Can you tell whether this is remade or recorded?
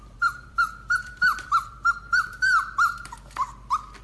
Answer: remade